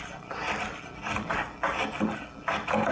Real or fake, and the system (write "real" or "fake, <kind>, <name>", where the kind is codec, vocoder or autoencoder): real